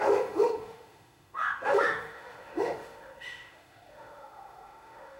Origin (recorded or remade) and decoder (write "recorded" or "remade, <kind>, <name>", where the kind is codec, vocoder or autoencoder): remade, autoencoder, DAC-VAE